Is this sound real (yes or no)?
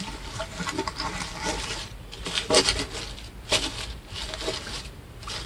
yes